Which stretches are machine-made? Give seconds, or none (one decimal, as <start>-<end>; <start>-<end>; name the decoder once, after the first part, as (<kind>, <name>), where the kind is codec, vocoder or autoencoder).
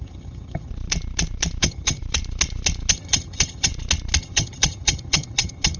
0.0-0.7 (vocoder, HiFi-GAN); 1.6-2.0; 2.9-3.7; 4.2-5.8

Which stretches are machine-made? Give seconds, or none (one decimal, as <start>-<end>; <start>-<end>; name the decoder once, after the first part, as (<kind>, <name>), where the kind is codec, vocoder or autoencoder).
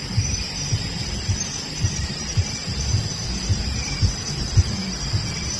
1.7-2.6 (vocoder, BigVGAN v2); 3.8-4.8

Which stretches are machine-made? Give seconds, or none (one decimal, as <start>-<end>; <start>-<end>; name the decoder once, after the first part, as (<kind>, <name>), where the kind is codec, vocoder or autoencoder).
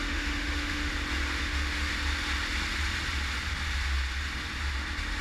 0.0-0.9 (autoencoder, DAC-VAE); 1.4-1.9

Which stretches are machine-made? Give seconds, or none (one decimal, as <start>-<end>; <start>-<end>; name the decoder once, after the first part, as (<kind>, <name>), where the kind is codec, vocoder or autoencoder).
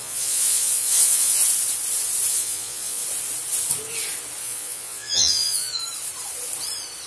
0.0-1.4 (vocoder, Vocos); 2.3-3.0; 4.4-5.8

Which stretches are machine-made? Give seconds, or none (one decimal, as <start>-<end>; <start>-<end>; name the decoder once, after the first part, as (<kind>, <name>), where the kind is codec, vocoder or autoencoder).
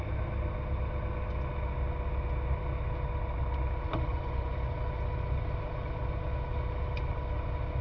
4.1-4.7 (vocoder, Vocos)